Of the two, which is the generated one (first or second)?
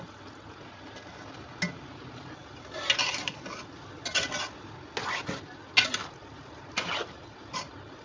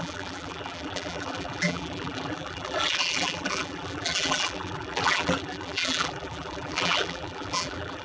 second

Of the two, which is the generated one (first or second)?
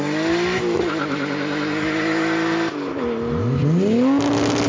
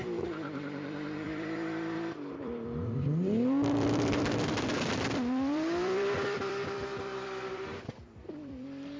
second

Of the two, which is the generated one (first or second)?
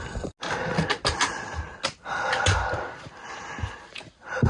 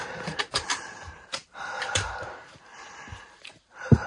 second